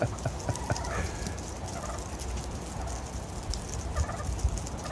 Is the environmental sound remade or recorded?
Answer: recorded